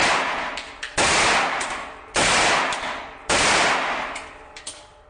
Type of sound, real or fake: real